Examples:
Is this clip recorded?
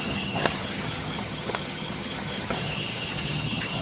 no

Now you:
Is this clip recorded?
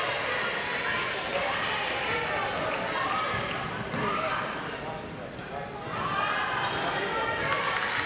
yes